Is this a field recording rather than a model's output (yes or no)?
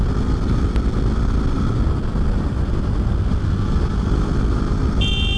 yes